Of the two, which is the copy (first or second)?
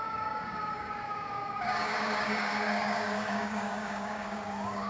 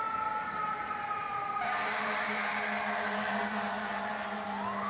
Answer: first